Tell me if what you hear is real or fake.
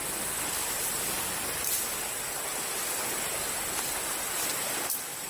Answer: real